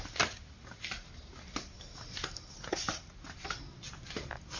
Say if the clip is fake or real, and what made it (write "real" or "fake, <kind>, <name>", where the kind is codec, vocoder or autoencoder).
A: real